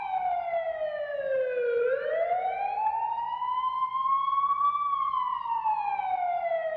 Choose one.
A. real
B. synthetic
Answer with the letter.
A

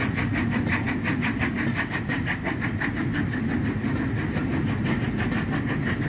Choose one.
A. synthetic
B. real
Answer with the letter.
B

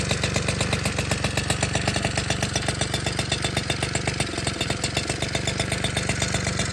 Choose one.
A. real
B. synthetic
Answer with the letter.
A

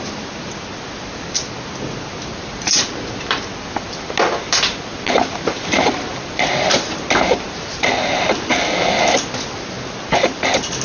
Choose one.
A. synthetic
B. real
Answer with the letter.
B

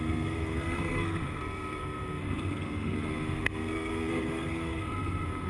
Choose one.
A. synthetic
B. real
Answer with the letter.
A